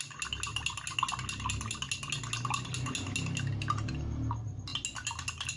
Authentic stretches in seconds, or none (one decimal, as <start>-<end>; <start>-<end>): 0.0-5.6